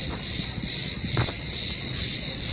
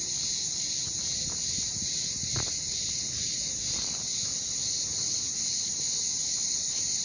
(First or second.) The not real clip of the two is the first